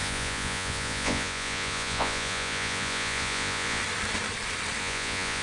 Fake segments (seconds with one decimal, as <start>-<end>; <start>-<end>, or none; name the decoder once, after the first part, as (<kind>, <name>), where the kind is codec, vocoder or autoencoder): 0.0-3.8 (vocoder, Vocos); 4.8-5.4